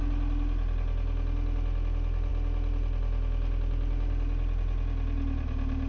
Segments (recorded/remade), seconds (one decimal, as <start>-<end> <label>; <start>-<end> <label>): 0.0-5.9 recorded

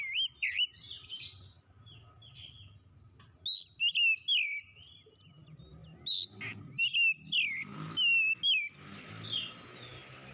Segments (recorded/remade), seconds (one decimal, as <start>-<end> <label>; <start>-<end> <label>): 0.0-10.3 recorded

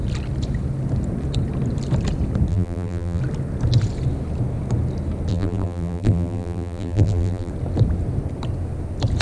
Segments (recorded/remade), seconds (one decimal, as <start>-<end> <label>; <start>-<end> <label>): 0.0-2.5 recorded; 2.5-3.2 remade; 3.2-5.3 recorded; 5.3-7.5 remade; 7.5-9.2 recorded

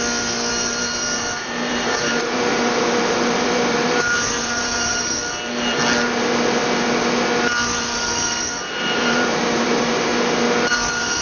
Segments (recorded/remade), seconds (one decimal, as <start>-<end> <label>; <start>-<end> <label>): 0.0-0.5 recorded; 0.5-5.2 remade; 5.2-8.8 recorded; 8.8-10.1 remade; 10.1-10.7 recorded; 10.7-11.2 remade

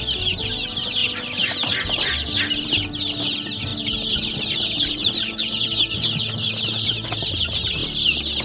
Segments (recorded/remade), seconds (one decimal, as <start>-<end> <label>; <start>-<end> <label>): 0.0-1.0 recorded; 1.0-2.8 remade; 2.8-3.7 recorded; 3.7-6.5 remade; 6.5-7.8 recorded; 7.8-8.4 remade